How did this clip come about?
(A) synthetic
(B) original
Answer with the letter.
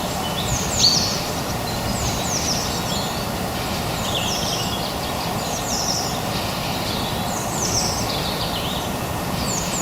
A